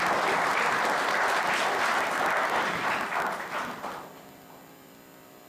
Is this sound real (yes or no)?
yes